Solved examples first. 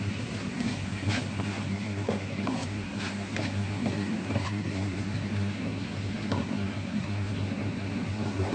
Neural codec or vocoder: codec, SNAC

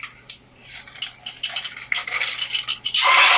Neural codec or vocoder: none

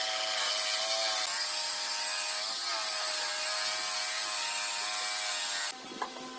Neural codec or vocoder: none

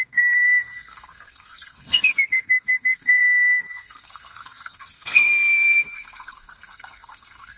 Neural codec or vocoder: codec, SNAC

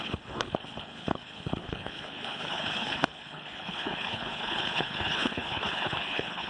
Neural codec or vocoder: codec, HILCodec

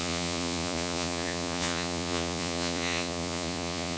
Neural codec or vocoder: vocoder, Vocos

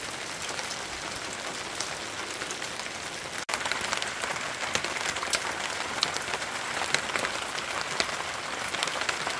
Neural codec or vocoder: none